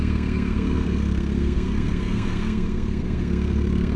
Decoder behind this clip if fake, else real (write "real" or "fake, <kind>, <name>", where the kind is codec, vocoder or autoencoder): fake, codec, SNAC